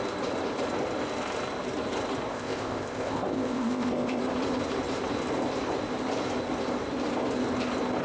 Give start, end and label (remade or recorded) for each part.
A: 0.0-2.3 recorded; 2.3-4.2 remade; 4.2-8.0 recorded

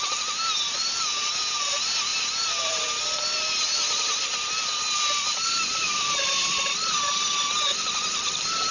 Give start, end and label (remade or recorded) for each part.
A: 0.0-0.8 recorded; 0.8-1.6 remade; 1.6-2.1 recorded; 2.1-7.3 remade; 7.3-8.7 recorded

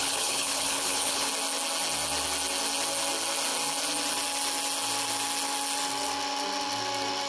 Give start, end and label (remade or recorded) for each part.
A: 0.0-1.3 remade; 1.3-7.3 recorded